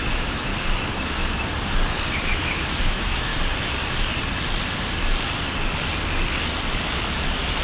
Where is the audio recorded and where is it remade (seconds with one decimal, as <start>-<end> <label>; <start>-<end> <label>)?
0.0-0.5 remade; 0.5-2.2 recorded; 2.2-3.3 remade; 3.3-7.6 recorded